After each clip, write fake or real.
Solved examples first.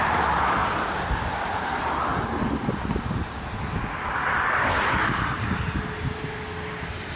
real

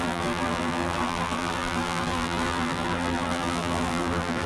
fake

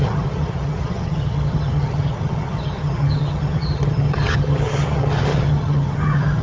fake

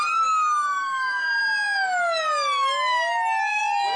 real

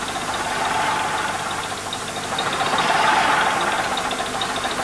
real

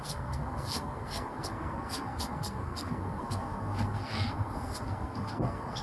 fake